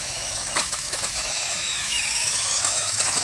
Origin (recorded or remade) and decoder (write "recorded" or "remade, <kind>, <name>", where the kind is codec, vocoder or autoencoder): remade, autoencoder, DAC-VAE